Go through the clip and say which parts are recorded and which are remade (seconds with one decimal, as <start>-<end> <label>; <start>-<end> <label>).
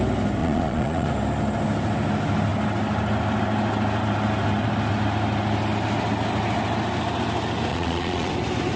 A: 0.0-0.4 recorded; 0.4-1.1 remade; 1.1-7.7 recorded; 7.7-8.3 remade; 8.3-8.8 recorded